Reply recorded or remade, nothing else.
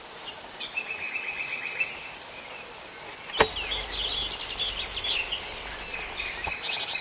recorded